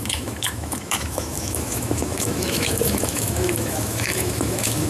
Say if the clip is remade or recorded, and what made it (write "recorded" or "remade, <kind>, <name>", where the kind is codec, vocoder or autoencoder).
remade, autoencoder, DAC-VAE